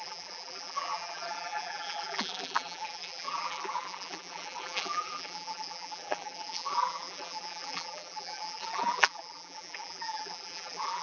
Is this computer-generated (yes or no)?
yes